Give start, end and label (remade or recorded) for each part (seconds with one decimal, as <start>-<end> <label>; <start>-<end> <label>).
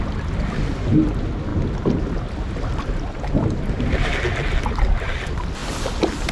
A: 0.0-6.3 recorded